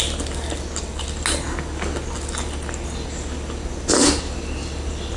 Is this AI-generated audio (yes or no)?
no